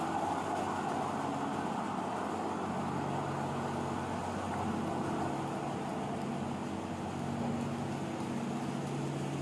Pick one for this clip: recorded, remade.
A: recorded